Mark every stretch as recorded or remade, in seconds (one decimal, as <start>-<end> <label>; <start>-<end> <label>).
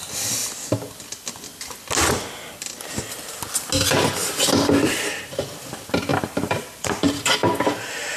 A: 0.0-0.4 recorded; 0.4-1.3 remade; 1.3-6.1 recorded; 6.1-7.2 remade; 7.2-8.2 recorded